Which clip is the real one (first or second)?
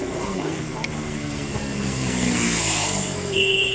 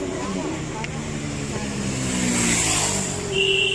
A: second